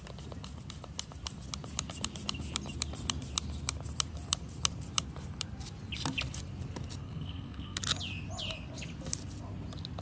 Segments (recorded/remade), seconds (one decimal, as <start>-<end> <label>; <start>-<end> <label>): 0.0-7.0 recorded; 7.0-7.8 remade; 7.8-10.0 recorded